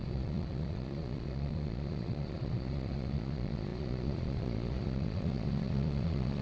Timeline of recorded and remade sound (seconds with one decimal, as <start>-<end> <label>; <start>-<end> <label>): 0.0-6.4 remade

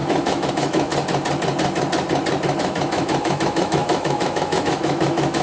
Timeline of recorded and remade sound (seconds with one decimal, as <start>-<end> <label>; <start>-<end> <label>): 0.0-0.9 remade; 0.9-2.6 recorded; 2.6-5.4 remade